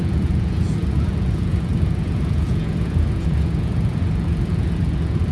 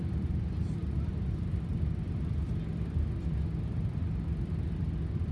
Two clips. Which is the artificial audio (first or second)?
first